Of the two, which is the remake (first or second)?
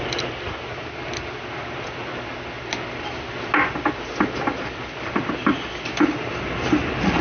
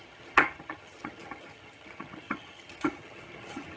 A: second